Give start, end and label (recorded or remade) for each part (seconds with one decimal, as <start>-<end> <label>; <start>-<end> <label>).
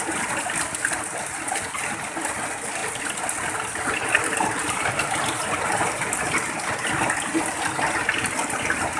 0.0-4.6 recorded; 4.6-6.3 remade; 6.3-9.0 recorded